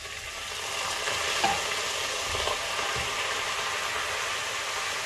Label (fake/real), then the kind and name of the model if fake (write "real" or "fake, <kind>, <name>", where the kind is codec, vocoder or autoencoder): real